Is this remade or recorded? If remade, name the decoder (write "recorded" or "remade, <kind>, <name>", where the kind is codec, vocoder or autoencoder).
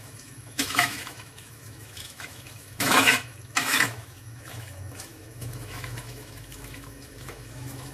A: remade, autoencoder, DAC-VAE